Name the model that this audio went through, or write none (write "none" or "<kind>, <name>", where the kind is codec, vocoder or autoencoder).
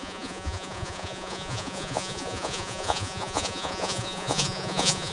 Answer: vocoder, Vocos